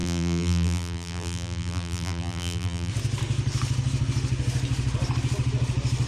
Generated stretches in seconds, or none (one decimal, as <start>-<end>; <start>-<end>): 0.0-2.9